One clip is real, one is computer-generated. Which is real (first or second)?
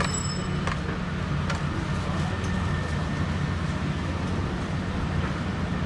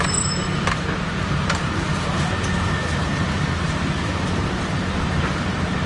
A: first